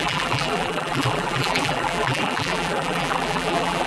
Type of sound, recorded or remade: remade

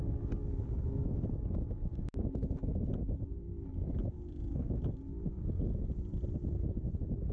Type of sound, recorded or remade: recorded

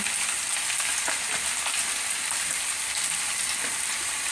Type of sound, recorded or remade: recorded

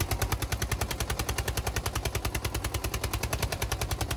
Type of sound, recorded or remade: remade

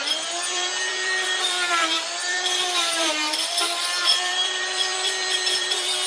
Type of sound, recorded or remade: remade